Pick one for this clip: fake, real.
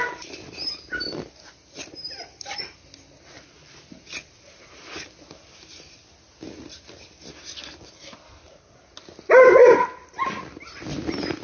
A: real